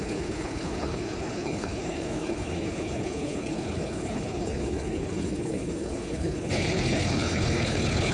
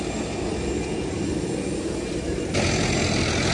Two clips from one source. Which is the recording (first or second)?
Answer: second